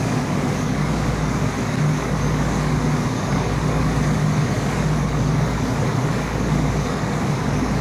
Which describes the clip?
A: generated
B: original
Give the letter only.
A